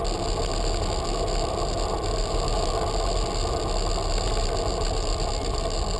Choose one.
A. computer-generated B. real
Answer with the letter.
B